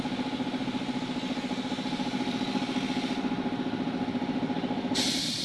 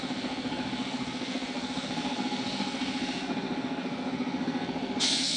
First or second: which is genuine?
first